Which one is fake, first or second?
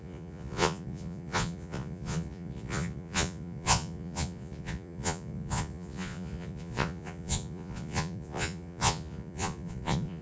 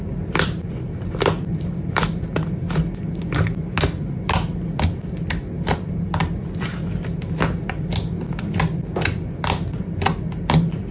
first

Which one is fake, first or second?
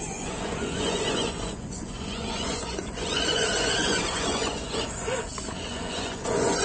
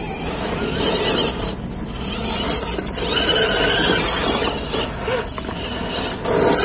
first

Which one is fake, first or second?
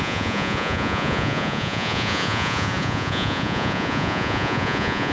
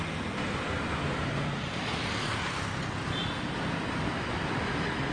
first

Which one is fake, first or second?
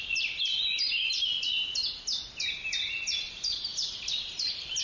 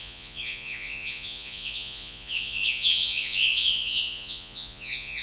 second